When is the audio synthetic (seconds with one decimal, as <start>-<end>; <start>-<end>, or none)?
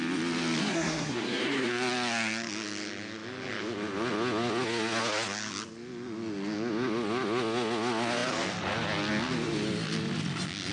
0.6-1.7